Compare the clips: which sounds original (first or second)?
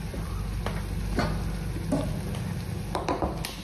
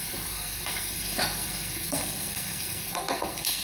first